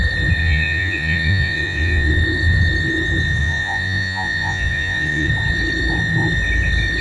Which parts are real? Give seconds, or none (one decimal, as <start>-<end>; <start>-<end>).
0.0-0.4; 2.1-3.4; 5.3-7.0